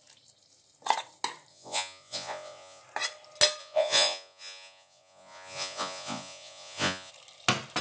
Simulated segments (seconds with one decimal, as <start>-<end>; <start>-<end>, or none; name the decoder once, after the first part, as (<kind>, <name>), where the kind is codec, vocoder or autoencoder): 1.5-2.8 (vocoder, Vocos); 3.6-7.1